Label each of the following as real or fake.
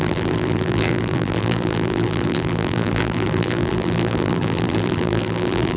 fake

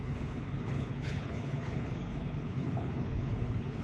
fake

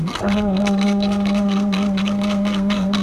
fake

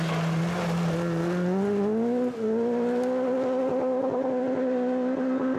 real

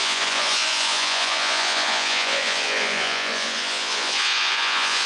fake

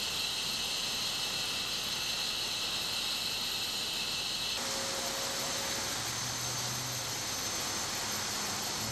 real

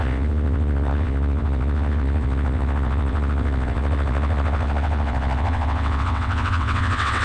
fake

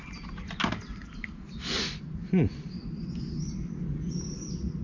real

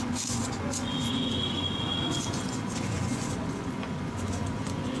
fake